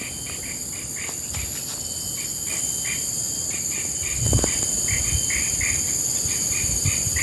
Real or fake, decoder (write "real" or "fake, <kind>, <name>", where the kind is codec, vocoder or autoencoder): real